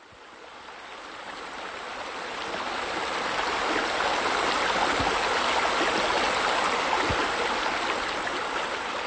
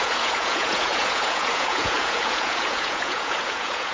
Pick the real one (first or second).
first